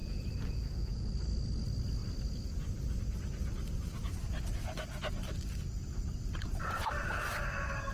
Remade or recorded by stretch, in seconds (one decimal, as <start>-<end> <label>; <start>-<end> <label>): 0.0-1.1 remade; 1.1-7.9 recorded